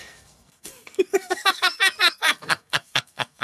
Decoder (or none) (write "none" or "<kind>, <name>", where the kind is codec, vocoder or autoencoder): codec, SNAC